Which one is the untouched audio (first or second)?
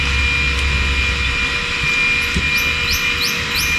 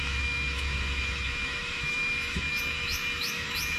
first